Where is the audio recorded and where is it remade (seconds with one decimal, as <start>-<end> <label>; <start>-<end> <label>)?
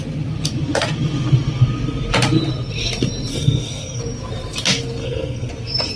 0.0-3.3 recorded; 3.3-4.0 remade; 4.0-5.0 recorded; 5.0-5.5 remade; 5.5-6.0 recorded